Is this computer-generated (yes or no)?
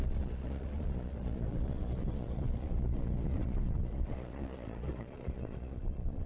yes